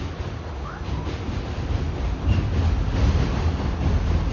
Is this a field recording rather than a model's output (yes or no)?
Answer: yes